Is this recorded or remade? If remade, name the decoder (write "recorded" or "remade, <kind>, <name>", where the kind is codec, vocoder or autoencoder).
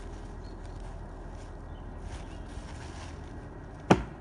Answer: recorded